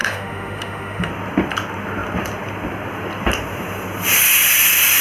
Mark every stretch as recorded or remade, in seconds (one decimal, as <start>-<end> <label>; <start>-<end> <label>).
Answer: 0.0-1.1 remade; 1.1-5.0 recorded